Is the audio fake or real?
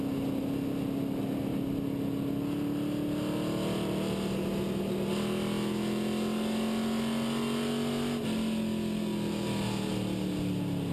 real